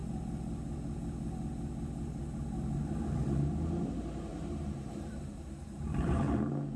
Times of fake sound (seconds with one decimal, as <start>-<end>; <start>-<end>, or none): 4.3-6.3